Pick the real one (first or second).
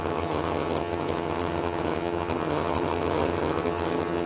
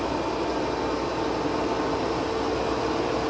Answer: second